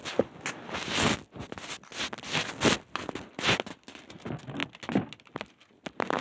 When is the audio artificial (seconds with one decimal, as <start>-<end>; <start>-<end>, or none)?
none